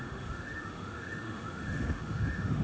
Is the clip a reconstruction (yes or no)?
yes